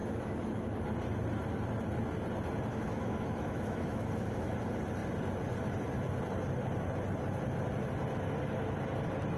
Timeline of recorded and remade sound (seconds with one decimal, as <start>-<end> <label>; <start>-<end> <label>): 0.0-0.8 remade; 0.8-2.7 recorded; 2.7-4.5 remade; 4.5-9.4 recorded